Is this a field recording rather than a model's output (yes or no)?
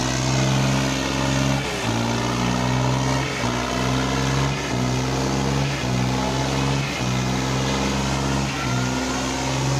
yes